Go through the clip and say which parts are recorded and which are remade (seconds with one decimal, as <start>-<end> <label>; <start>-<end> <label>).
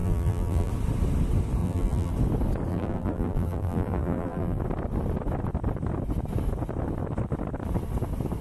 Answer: 0.0-0.7 remade; 0.7-1.6 recorded; 1.6-2.1 remade; 2.1-2.7 recorded; 2.7-4.6 remade; 4.6-8.4 recorded